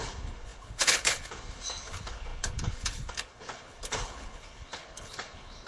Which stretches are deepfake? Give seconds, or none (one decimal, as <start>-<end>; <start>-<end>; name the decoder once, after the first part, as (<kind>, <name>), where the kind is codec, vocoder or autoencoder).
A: 0.0-5.7 (codec, HILCodec)